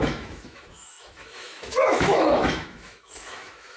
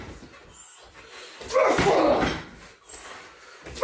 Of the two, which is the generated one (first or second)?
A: first